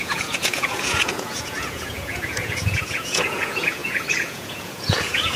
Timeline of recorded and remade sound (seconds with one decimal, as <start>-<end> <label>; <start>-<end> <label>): 0.0-5.4 remade